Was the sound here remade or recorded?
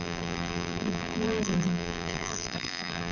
remade